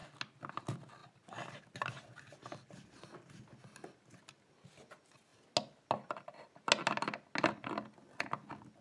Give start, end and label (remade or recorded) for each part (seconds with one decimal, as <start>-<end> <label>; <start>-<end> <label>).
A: 0.0-8.8 recorded